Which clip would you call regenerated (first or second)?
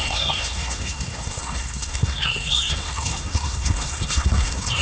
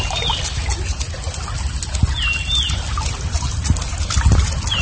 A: first